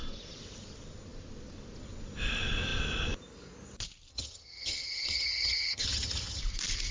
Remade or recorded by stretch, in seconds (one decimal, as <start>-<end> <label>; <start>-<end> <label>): 0.0-4.1 recorded; 4.1-6.4 remade; 6.4-6.9 recorded